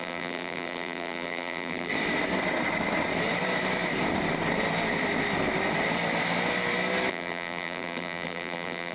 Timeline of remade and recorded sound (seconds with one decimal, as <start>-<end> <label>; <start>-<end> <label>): 0.0-1.9 remade; 1.9-7.1 recorded; 7.1-8.9 remade